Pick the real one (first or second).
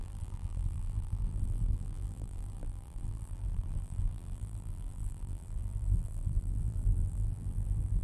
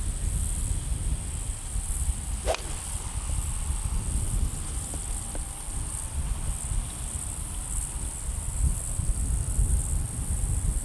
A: second